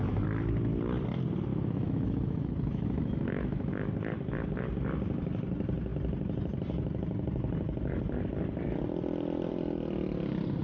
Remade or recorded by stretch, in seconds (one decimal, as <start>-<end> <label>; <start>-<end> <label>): 0.0-1.5 recorded; 1.5-3.7 remade; 3.7-10.6 recorded

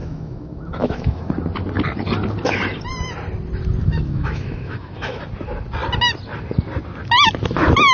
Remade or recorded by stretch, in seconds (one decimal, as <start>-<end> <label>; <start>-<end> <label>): 0.0-1.3 remade; 1.3-3.8 recorded; 3.8-5.2 remade; 5.2-7.9 recorded

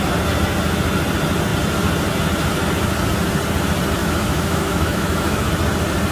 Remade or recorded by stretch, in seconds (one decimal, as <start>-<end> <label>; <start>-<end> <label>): 0.0-4.0 recorded; 4.0-5.5 remade; 5.5-6.1 recorded

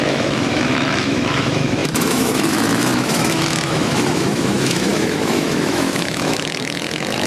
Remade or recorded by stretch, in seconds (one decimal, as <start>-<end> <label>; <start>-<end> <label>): 0.0-7.3 remade

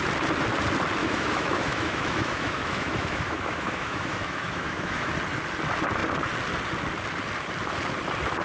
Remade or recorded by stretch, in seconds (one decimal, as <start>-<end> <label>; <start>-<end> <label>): 0.0-1.0 recorded; 1.0-5.1 remade; 5.1-8.4 recorded

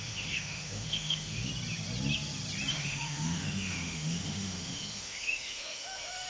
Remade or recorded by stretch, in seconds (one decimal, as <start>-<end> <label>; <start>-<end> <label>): 0.0-1.5 remade; 1.5-2.7 recorded; 2.7-6.3 remade

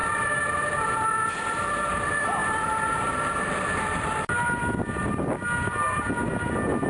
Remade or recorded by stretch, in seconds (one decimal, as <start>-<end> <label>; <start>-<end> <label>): 0.0-6.9 recorded